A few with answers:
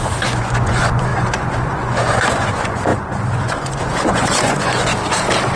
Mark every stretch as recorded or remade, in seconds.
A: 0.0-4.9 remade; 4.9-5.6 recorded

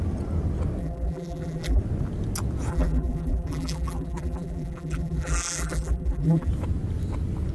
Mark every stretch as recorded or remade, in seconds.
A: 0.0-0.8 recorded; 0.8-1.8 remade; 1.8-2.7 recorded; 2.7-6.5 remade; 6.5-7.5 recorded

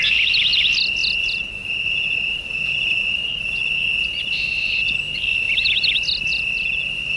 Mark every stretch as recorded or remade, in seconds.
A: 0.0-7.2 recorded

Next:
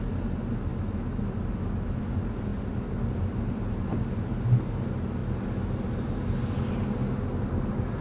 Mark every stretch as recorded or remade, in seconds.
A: 0.0-0.7 recorded; 0.7-1.2 remade; 1.2-8.0 recorded